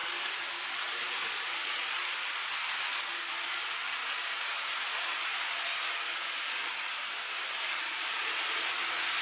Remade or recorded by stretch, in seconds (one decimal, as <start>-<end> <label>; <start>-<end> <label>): 0.0-9.2 recorded